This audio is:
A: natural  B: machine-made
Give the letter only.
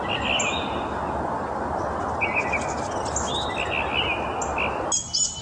A